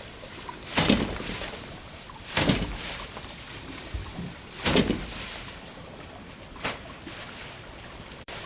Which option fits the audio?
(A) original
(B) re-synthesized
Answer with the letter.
B